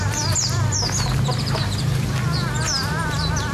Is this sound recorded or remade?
remade